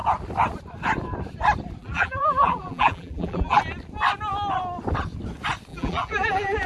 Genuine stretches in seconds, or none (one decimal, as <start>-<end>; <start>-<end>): 0.0-1.8; 3.6-5.7